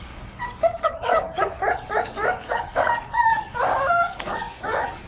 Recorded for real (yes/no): no